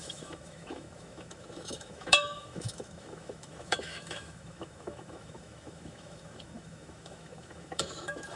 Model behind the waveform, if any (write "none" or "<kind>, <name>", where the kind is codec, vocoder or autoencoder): autoencoder, DAC-VAE